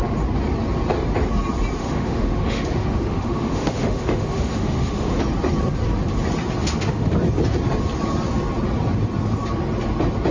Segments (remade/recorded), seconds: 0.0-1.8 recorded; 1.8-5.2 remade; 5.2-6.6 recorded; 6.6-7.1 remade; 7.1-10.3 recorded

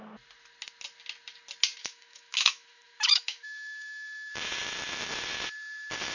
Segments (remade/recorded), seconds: 0.0-1.8 recorded; 1.8-4.3 remade; 4.3-6.1 recorded

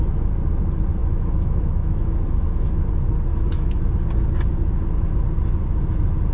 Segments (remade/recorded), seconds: 0.0-1.0 recorded; 1.0-2.9 remade; 2.9-3.3 recorded; 3.3-3.8 remade; 3.8-6.3 recorded

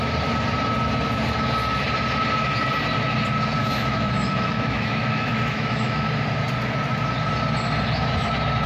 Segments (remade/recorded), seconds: 0.0-3.6 recorded; 3.6-6.1 remade; 6.1-8.7 recorded

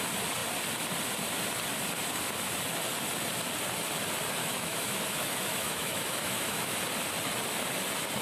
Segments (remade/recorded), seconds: 0.0-4.4 recorded; 4.4-6.8 remade; 6.8-8.2 recorded

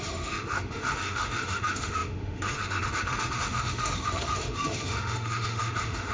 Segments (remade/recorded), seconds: 0.0-6.1 remade